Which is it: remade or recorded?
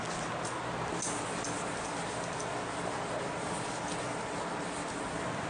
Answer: recorded